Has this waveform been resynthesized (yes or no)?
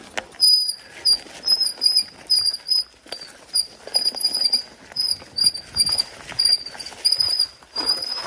no